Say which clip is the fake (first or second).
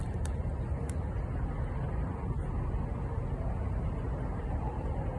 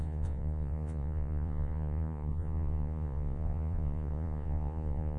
second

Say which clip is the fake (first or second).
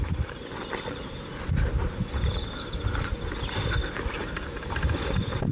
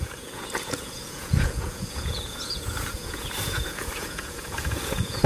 second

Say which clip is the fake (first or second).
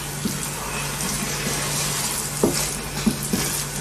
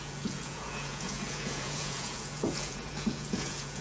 second